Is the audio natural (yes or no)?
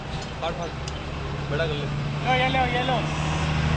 yes